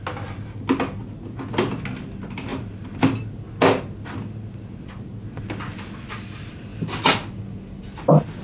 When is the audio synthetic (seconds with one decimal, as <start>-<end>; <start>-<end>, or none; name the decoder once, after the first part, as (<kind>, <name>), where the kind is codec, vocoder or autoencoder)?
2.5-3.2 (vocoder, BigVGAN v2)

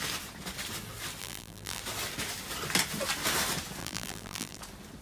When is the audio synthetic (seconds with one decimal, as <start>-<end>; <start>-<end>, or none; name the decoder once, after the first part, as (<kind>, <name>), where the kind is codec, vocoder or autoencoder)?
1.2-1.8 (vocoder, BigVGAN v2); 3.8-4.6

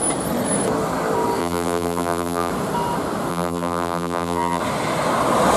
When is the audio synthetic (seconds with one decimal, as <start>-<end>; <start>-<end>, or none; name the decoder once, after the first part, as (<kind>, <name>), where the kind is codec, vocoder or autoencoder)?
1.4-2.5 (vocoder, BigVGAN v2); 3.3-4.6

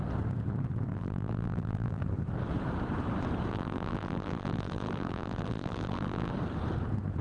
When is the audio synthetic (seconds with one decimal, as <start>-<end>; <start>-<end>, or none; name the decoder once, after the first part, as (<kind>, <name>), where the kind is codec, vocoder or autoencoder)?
0.9-2.0 (vocoder, BigVGAN v2); 3.5-6.3

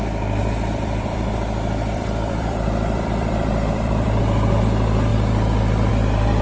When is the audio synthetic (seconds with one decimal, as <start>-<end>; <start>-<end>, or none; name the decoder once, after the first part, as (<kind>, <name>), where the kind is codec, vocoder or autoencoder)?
0.4-4.2 (vocoder, BigVGAN v2)

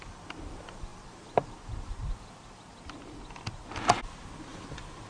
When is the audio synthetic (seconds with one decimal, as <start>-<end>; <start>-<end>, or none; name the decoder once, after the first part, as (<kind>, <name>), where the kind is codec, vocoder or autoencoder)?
none